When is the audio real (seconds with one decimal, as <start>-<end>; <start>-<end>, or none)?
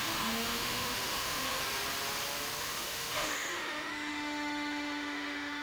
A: 1.6-2.6